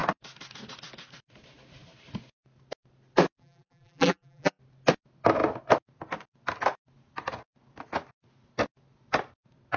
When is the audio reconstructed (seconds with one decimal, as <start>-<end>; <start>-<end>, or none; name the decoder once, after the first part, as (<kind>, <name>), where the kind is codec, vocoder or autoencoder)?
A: 3.4-4.6 (vocoder, BigVGAN v2)